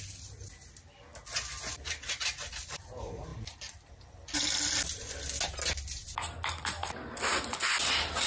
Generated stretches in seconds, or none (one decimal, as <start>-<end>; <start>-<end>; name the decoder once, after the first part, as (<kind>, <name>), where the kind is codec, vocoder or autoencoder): none